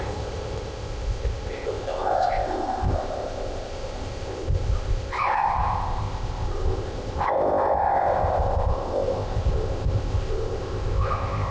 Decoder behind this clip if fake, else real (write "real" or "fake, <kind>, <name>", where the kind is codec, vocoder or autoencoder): fake, codec, ZipCodec